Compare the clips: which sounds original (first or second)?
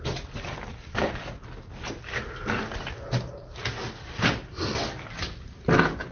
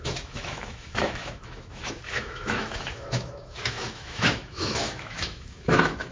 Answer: first